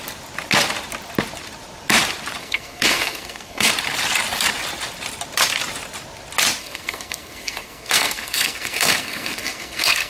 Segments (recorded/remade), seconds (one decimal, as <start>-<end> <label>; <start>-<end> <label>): 0.0-2.4 recorded; 2.4-3.7 remade; 3.7-6.6 recorded; 6.6-10.1 remade